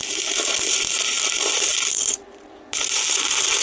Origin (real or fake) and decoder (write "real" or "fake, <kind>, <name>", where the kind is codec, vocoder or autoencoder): real